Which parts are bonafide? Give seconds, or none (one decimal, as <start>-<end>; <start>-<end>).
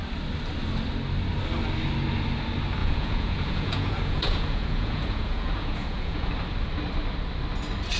0.0-2.8; 6.3-8.0